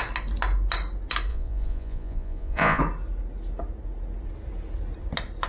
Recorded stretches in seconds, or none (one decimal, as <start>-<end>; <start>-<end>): 0.0-1.3; 2.8-5.5